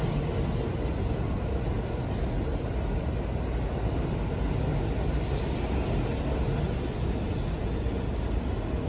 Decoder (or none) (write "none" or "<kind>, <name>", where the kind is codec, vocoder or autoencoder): none